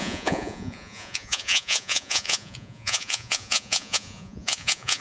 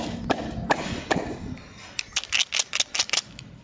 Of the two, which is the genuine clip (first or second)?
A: second